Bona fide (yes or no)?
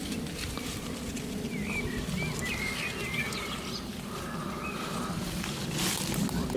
yes